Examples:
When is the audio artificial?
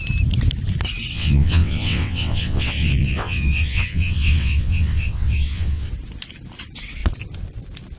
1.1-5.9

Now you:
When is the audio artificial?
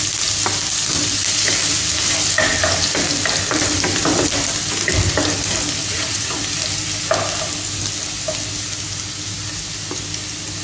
5.8-6.4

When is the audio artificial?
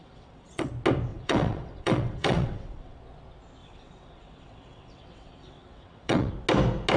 0.0-0.7; 1.1-3.0; 3.6-6.3